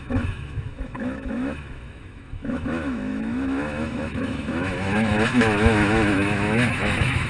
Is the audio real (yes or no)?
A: no